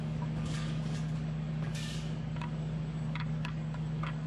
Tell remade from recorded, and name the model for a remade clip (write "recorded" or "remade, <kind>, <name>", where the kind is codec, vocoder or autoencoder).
remade, codec, DAC